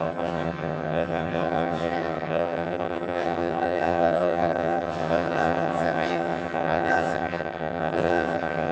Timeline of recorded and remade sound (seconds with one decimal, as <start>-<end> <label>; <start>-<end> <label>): 0.0-8.7 remade